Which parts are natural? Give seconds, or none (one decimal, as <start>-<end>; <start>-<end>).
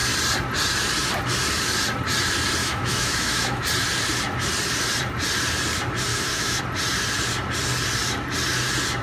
0.0-2.6; 3.6-6.1; 6.6-9.0